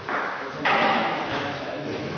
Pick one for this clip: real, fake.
fake